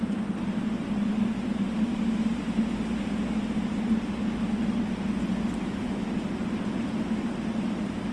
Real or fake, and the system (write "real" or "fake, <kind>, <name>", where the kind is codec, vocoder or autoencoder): real